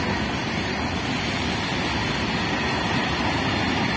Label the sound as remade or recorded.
recorded